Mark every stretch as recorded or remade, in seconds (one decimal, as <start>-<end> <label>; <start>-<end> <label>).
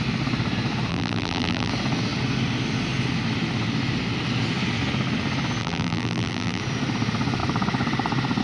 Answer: 0.0-0.9 recorded; 0.9-1.7 remade; 1.7-5.6 recorded; 5.6-6.6 remade; 6.6-8.4 recorded